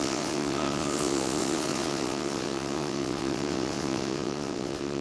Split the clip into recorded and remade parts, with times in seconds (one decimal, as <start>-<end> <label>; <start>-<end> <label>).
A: 0.0-5.0 remade